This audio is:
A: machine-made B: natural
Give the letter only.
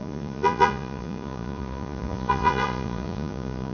A